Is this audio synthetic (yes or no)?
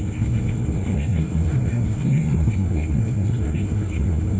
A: yes